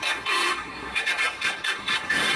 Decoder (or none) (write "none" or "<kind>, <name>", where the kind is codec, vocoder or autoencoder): codec, SNAC